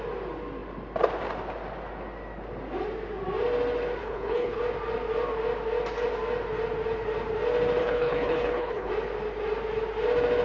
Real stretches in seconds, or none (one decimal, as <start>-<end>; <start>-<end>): 0.0-4.0; 4.6-7.8; 8.9-10.4